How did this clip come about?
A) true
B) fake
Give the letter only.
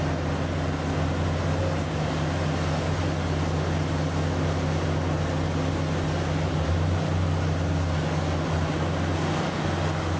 A